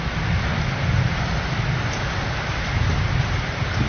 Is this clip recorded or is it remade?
recorded